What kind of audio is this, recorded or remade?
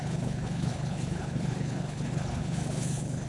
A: remade